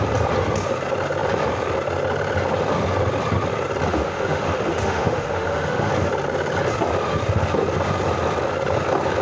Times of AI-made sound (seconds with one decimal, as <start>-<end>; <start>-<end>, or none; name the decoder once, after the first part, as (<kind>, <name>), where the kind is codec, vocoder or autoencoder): 3.9-5.9 (autoencoder, DAC-VAE)